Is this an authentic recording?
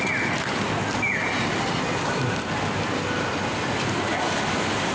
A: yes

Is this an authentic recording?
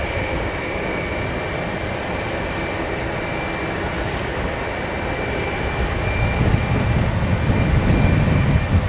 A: yes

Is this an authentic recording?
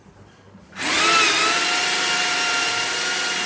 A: yes